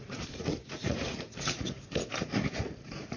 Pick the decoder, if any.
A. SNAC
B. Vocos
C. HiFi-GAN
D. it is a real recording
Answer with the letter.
B